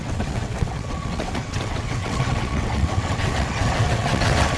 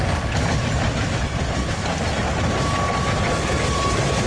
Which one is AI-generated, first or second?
first